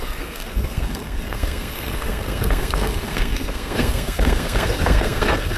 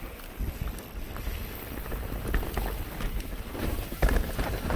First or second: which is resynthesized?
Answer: first